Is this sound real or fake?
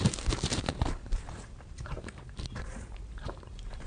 fake